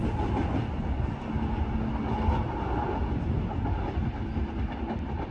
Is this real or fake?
real